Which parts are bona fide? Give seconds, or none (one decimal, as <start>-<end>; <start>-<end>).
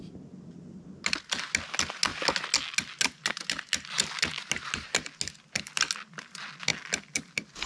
0.0-7.7